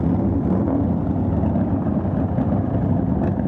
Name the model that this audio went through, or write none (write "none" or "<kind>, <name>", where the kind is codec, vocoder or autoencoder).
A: none